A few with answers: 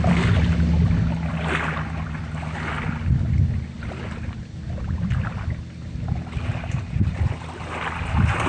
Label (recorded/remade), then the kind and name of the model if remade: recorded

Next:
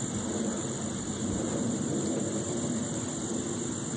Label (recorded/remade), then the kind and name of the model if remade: recorded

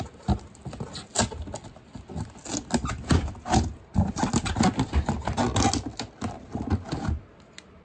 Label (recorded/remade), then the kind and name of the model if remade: recorded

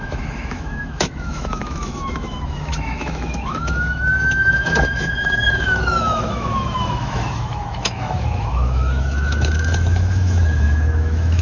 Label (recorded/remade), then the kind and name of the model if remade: remade, autoencoder, DAC-VAE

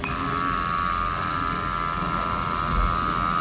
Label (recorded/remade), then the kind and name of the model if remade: recorded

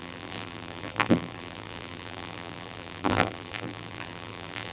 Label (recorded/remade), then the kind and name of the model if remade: remade, vocoder, BigVGAN v2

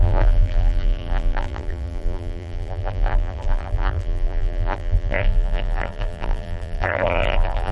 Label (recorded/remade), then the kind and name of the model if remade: remade, vocoder, BigVGAN v2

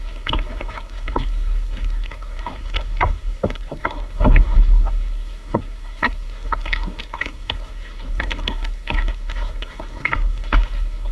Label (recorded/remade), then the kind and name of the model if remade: remade, codec, SNAC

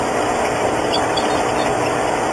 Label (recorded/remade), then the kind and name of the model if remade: recorded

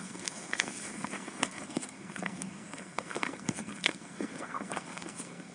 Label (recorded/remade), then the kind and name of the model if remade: remade, codec, SNAC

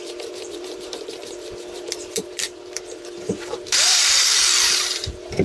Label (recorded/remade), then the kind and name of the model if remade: remade, vocoder, BigVGAN v2